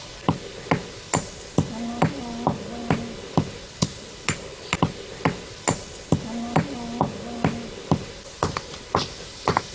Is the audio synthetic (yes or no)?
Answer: no